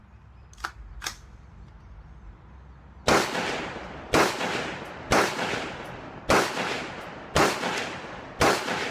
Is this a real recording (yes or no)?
yes